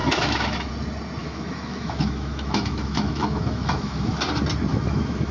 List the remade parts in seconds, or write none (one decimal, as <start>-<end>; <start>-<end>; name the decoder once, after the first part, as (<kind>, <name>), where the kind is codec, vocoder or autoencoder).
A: 0.0-0.7 (autoencoder, DAC-VAE); 1.2-4.1; 4.7-5.3